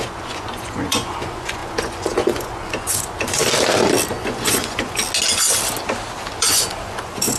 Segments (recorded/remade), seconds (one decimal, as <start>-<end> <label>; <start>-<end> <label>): 0.0-3.4 remade; 3.4-4.1 recorded; 4.1-5.0 remade; 5.0-6.3 recorded; 6.3-7.4 remade